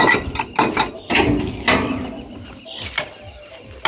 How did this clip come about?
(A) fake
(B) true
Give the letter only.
B